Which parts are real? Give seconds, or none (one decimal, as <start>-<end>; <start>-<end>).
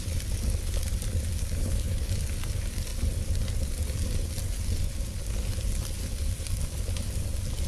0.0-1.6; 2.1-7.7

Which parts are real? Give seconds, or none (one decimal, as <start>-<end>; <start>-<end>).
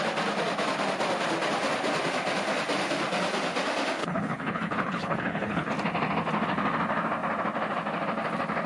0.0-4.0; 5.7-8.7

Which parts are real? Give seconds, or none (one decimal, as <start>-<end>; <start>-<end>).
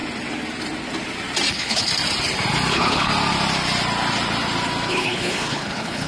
0.0-1.5; 1.9-2.7; 3.1-4.9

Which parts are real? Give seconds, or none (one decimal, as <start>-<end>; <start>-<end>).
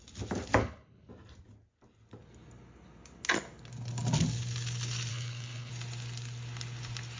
0.0-0.6; 1.1-5.1; 5.7-7.2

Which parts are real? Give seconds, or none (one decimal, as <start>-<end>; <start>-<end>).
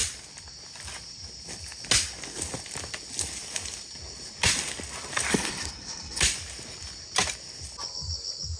0.0-5.3; 6.2-8.6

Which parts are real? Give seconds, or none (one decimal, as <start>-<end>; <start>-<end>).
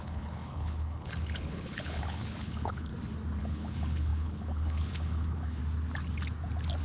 2.9-3.4; 5.6-6.8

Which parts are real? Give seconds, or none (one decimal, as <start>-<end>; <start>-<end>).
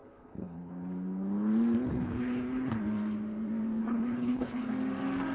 0.7-1.9; 2.8-3.8; 4.7-5.3